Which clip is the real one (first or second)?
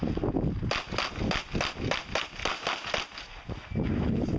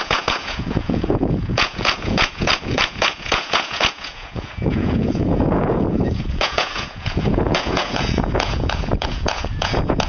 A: first